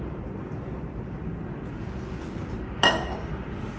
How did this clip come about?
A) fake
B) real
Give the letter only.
B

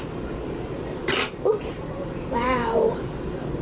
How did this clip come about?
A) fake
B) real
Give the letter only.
A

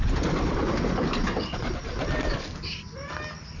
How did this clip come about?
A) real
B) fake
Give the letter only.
A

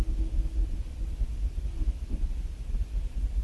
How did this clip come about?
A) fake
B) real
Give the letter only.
B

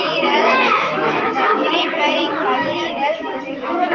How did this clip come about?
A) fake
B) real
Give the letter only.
A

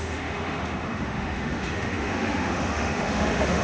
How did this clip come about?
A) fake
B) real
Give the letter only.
A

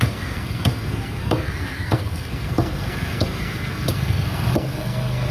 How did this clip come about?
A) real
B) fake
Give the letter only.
B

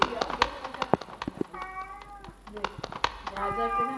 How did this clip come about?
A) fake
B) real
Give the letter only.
B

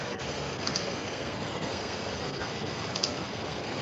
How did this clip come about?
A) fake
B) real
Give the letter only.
A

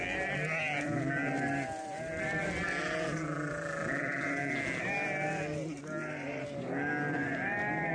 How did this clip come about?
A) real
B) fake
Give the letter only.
A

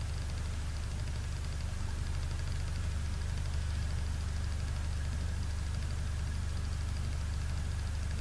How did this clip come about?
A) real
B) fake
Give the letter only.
A